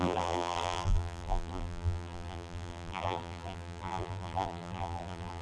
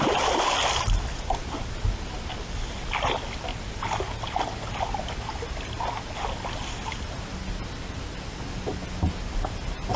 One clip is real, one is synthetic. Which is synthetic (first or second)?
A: first